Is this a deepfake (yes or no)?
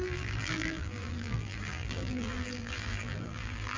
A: yes